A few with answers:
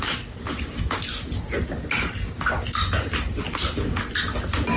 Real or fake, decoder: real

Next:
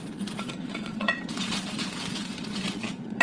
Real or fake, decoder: fake, vocoder, Vocos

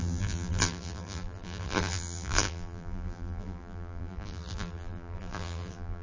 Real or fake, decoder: fake, vocoder, BigVGAN v2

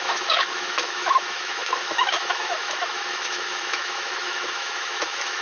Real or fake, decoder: fake, autoencoder, DAC-VAE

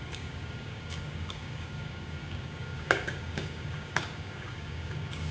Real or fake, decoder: fake, codec, DAC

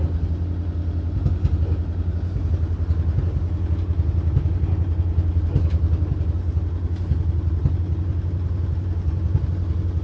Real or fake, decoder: real